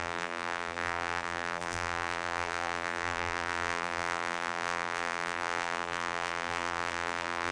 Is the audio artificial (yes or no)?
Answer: yes